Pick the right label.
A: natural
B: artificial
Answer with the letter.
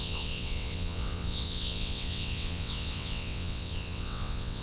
B